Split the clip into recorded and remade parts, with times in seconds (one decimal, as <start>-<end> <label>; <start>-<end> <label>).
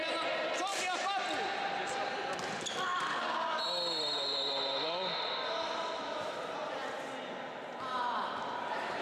0.0-2.9 recorded; 2.9-3.6 remade; 3.6-9.0 recorded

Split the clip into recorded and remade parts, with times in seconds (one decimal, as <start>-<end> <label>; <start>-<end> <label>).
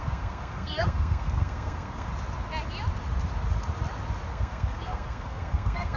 0.0-2.1 remade; 2.1-4.3 recorded; 4.3-6.0 remade